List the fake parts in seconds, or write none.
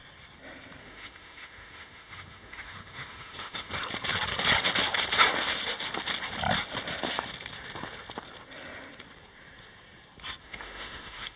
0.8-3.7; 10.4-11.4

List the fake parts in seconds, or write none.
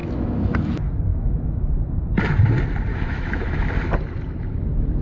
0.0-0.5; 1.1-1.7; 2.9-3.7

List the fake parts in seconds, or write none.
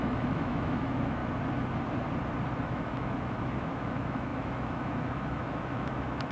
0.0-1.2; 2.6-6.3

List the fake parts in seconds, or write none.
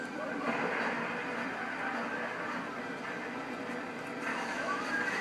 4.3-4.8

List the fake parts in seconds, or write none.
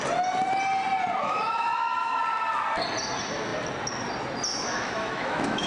1.2-2.2; 4.5-5.7